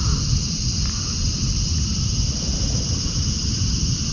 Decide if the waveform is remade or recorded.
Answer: recorded